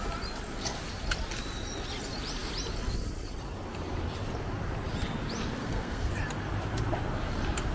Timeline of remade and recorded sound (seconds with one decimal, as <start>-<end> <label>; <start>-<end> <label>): 0.0-5.6 recorded; 5.6-6.1 remade; 6.1-7.7 recorded